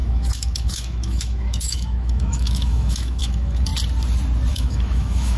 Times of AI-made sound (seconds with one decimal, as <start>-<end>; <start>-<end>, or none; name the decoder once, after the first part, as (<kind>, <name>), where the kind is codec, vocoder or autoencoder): 0.0-3.7 (autoencoder, DAC-VAE); 4.5-5.4